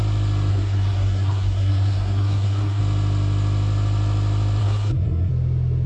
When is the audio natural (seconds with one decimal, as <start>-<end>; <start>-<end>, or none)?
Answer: 0.0-0.5; 2.8-4.6; 5.3-5.9